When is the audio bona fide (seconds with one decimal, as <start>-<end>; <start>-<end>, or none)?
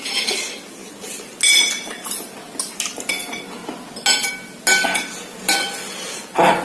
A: 0.0-6.6